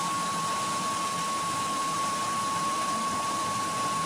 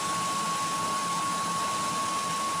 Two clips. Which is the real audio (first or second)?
second